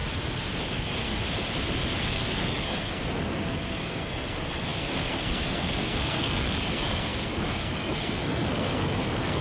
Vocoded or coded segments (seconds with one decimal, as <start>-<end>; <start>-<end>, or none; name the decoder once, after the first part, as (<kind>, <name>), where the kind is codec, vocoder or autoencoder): 0.7-1.1 (codec, SNAC); 2.0-9.4